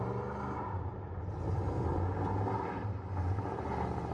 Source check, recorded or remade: recorded